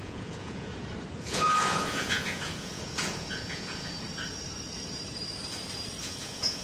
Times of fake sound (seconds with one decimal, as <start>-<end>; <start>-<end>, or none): 0.0-0.7; 1.2-3.9; 6.0-6.6